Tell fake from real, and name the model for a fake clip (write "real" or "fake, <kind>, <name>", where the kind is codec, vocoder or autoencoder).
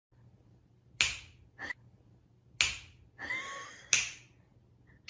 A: real